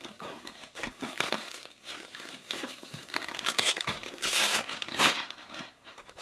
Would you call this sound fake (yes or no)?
yes